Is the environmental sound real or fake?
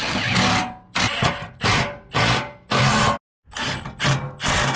real